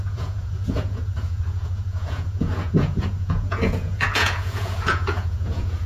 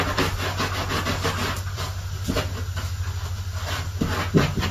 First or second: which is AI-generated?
first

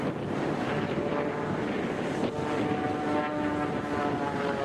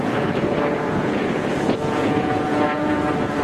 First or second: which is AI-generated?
second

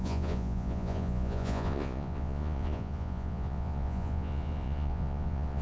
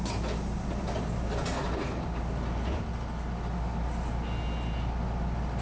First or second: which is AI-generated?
first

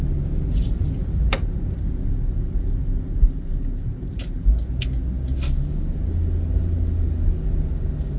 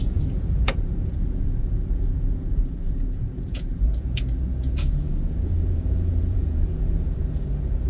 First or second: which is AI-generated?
second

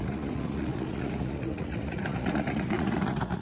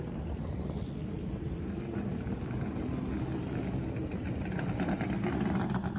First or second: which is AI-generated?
first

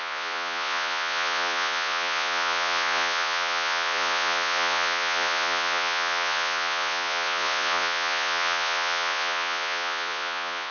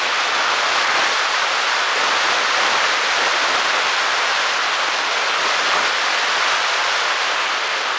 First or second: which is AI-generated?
first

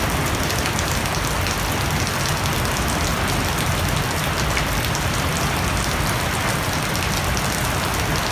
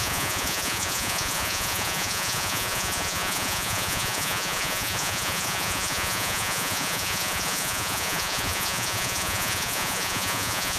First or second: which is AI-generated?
second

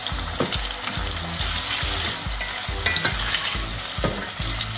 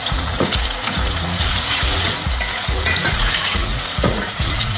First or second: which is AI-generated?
second